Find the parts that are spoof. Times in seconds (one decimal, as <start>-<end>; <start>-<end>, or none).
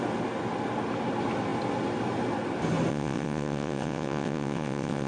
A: 2.9-5.1